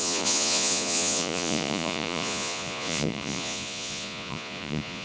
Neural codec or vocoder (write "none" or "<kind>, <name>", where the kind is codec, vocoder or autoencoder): vocoder, Vocos